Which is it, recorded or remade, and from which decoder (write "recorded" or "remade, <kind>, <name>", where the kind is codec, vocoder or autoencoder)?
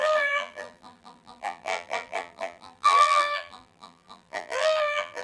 remade, vocoder, BigVGAN v2